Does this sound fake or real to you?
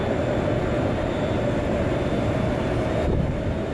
real